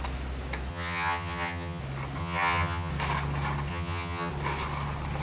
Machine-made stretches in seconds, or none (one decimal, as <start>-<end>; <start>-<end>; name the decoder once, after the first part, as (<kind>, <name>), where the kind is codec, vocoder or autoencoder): 0.7-1.8 (vocoder, HiFi-GAN); 2.2-2.9; 3.7-4.3